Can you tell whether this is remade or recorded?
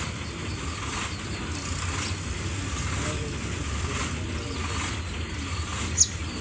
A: recorded